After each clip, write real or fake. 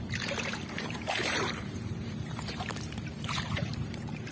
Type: fake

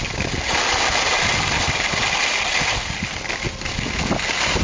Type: real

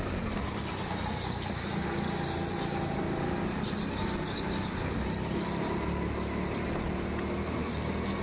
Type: real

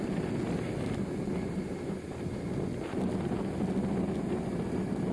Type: real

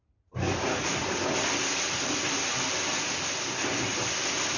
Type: real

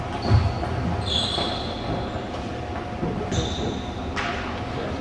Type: real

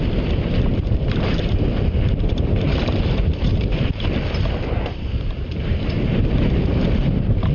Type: fake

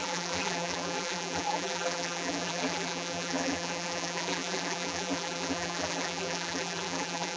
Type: fake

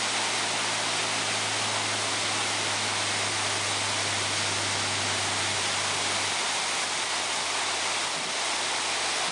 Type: real